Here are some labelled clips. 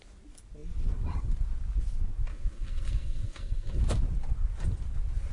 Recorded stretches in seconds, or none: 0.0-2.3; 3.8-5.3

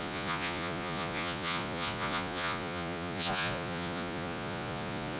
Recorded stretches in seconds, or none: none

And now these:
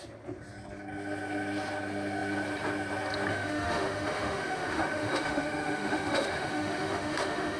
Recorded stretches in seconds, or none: 0.0-3.3

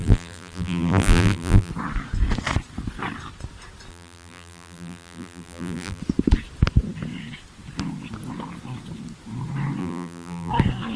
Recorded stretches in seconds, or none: 1.7-3.9; 6.0-9.8; 10.5-11.0